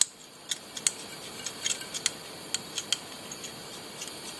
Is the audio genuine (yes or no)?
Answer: yes